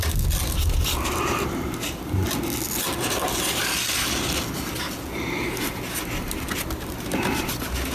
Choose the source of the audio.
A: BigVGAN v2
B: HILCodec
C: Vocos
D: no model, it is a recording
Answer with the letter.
D